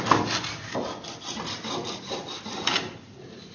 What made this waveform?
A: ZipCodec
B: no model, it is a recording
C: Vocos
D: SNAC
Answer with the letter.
B